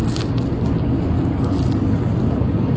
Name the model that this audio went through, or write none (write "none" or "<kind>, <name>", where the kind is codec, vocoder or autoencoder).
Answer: none